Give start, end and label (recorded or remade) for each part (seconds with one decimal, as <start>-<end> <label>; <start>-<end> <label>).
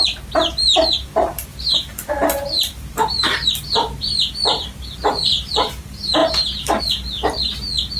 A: 0.0-1.5 recorded; 1.5-5.8 remade; 5.8-8.0 recorded